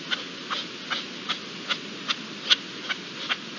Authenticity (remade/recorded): recorded